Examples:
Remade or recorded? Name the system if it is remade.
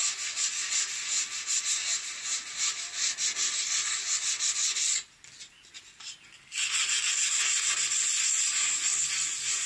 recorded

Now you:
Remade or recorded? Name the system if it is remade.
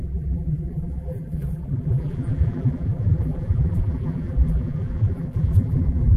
remade, vocoder, BigVGAN v2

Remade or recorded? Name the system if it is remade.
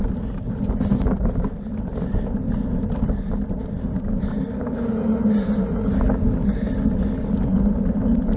recorded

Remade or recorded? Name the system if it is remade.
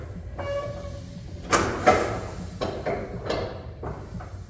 recorded